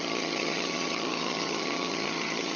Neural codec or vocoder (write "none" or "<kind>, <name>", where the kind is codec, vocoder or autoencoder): vocoder, HiFi-GAN